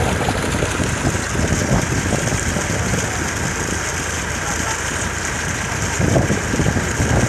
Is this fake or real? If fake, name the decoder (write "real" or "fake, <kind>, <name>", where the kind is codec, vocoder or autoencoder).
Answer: real